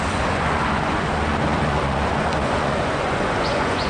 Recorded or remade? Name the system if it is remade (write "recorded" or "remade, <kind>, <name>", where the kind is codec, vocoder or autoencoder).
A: remade, vocoder, Vocos